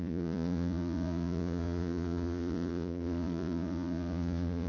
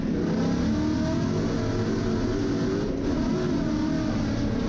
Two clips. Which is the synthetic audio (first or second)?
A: first